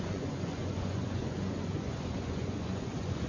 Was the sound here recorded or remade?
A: remade